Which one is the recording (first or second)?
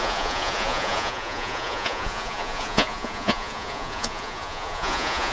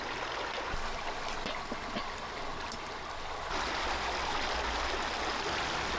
second